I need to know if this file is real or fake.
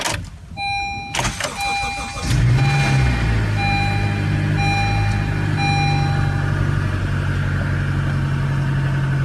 real